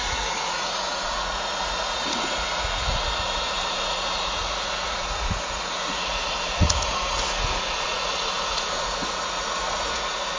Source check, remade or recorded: remade